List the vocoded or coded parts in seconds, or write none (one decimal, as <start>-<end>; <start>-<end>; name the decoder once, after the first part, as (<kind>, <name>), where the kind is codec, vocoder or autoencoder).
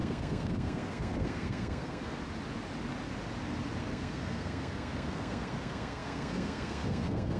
0.0-2.2 (codec, SNAC); 3.8-7.4